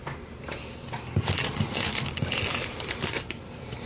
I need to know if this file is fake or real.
real